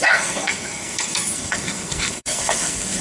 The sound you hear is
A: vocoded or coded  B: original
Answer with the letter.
A